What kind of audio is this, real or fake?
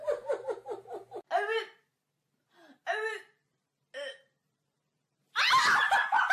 real